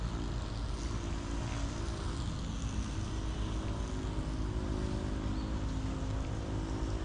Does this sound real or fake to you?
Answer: real